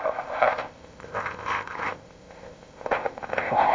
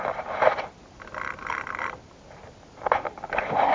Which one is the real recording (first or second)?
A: second